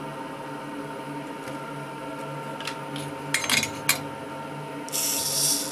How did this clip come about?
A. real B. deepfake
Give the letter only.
A